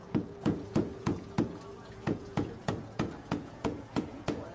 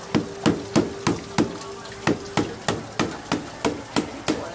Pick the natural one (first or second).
second